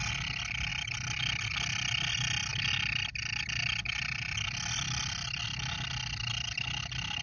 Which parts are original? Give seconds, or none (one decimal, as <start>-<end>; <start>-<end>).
0.0-7.2